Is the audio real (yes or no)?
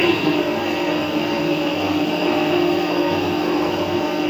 no